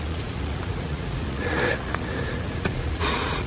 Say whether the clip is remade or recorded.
remade